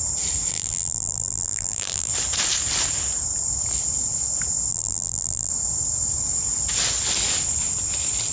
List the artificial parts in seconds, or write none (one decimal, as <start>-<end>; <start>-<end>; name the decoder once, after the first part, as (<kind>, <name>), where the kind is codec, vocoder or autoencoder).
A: 0.5-2.1 (vocoder, BigVGAN v2); 4.7-5.5